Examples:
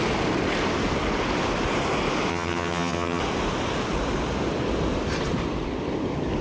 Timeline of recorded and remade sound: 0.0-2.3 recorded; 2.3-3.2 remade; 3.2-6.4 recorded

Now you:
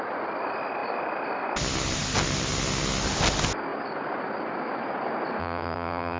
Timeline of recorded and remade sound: 0.0-5.4 recorded; 5.4-6.2 remade

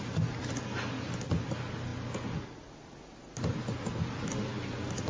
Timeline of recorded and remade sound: 0.0-5.1 recorded

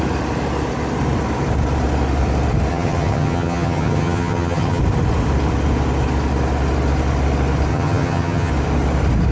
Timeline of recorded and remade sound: 0.0-2.7 recorded; 2.7-4.8 remade; 4.8-7.7 recorded; 7.7-8.5 remade; 8.5-9.3 recorded